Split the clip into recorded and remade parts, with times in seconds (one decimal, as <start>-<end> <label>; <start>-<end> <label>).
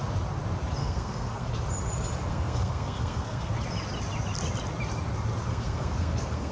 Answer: 0.0-0.8 recorded; 0.8-1.5 remade; 1.5-2.3 recorded; 2.3-3.5 remade; 3.5-5.5 recorded; 5.5-6.5 remade